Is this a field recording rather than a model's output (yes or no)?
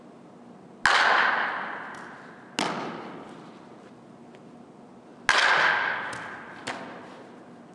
yes